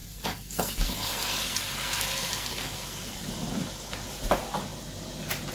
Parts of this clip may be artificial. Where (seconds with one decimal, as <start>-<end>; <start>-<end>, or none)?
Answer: 0.0-3.3